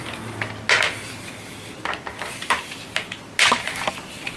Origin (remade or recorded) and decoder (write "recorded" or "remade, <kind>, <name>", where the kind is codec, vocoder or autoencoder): recorded